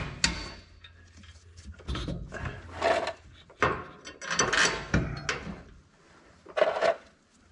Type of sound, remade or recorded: recorded